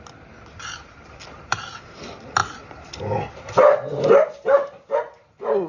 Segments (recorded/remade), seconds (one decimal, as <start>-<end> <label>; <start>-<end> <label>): 0.0-5.7 recorded